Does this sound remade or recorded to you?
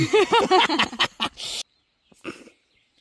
recorded